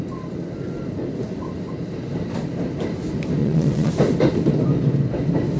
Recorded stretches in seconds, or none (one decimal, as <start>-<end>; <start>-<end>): 0.0-3.4; 3.9-5.6